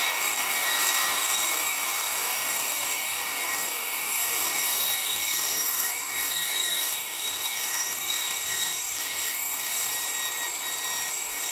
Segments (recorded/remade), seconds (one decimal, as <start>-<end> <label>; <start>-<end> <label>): 0.0-9.9 remade; 9.9-11.1 recorded; 11.1-11.5 remade